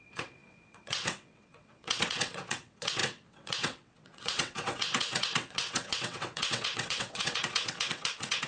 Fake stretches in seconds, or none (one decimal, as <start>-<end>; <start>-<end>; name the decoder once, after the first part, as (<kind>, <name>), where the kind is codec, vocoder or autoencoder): 0.0-8.5 (vocoder, WaveNeXt)